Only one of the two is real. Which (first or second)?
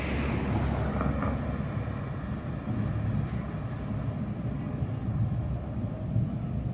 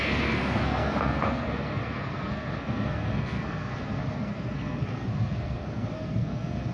first